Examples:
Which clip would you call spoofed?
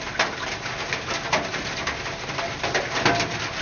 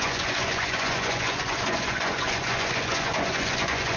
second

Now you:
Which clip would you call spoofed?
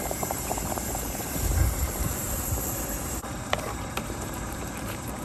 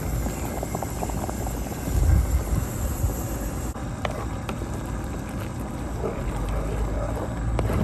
first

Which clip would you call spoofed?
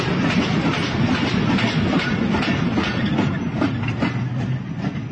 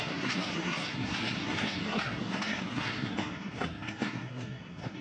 second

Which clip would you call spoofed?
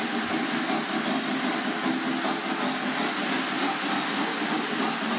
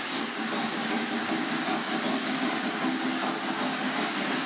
second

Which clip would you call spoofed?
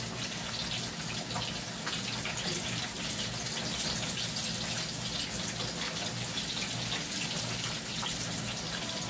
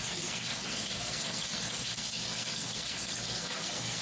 second